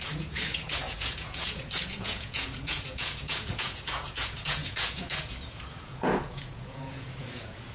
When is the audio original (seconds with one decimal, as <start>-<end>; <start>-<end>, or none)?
none